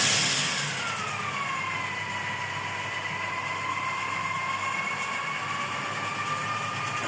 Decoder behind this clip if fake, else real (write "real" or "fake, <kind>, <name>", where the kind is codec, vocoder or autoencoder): real